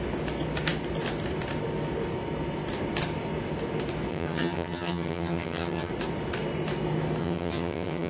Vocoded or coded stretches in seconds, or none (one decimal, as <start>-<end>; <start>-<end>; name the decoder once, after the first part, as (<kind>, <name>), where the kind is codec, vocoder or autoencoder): 4.1-5.9 (vocoder, HiFi-GAN); 7.2-8.1